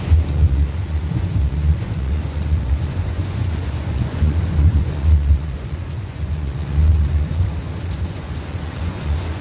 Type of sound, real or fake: fake